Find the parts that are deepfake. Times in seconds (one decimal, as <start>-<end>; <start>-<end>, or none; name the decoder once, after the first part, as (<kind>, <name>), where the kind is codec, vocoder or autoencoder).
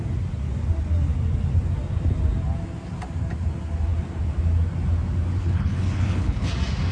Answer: 5.4-6.5 (codec, HILCodec)